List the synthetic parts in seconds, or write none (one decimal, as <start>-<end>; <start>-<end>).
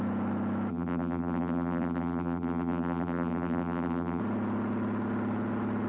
0.7-4.2